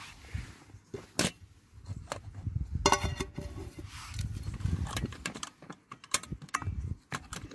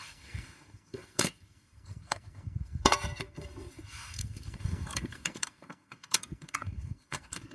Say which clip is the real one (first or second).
first